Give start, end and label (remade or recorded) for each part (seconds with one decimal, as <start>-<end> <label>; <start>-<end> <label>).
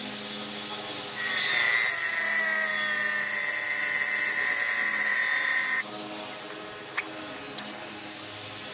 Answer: 0.0-8.7 recorded